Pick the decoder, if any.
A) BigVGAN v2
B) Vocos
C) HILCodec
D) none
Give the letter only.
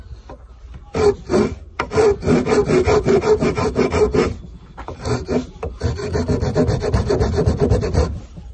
D